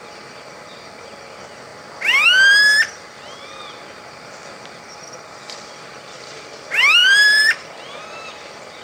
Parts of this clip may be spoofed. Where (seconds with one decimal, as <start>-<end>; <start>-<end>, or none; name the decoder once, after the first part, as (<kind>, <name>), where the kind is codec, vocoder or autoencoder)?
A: 7.0-8.4 (vocoder, BigVGAN v2)